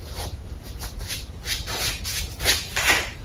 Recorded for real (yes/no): no